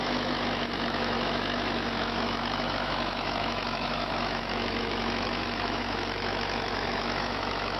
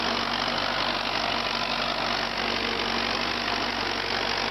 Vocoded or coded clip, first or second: first